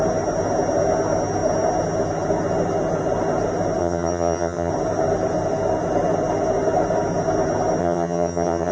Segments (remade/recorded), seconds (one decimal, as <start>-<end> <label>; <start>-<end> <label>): 0.0-3.8 recorded; 3.8-4.7 remade; 4.7-7.8 recorded; 7.8-8.7 remade